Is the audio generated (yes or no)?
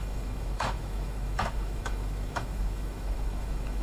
yes